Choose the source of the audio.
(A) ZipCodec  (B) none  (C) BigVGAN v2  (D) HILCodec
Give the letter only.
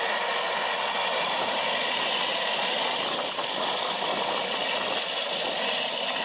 B